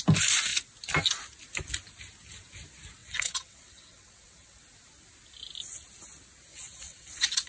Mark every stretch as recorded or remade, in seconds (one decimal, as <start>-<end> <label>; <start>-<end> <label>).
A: 0.0-3.0 recorded; 3.0-4.6 remade; 4.6-6.5 recorded; 6.5-7.5 remade

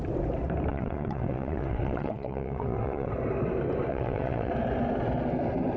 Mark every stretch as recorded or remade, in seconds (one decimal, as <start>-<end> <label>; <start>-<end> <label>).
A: 0.0-0.7 recorded; 0.7-3.1 remade; 3.1-3.9 recorded; 3.9-4.5 remade; 4.5-5.8 recorded

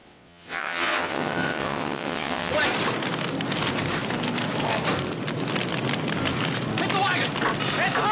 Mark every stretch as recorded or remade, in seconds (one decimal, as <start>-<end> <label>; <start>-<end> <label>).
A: 0.0-2.5 remade; 2.5-8.1 recorded

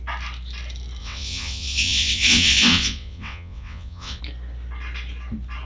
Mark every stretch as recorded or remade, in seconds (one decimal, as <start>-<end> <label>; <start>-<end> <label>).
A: 0.0-1.0 recorded; 1.0-4.2 remade; 4.2-5.6 recorded

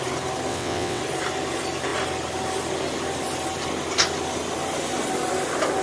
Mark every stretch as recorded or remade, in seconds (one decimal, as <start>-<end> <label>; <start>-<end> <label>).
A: 0.0-0.5 recorded; 0.5-1.0 remade; 1.0-5.8 recorded